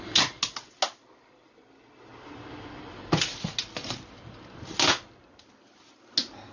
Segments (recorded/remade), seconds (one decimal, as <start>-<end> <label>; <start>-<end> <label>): 0.0-6.5 recorded